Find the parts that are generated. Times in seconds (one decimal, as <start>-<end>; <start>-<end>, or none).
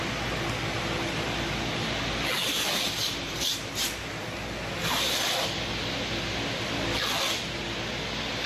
3.0-4.2; 4.8-5.3